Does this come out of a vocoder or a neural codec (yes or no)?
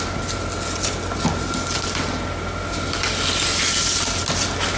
no